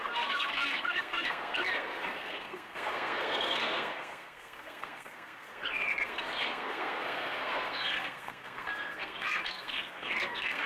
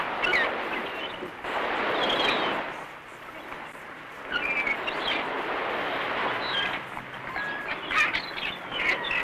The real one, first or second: second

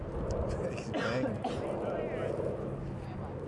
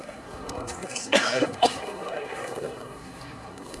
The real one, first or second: first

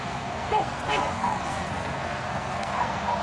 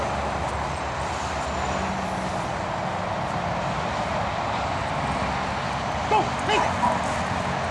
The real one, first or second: second